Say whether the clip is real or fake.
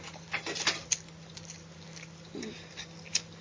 real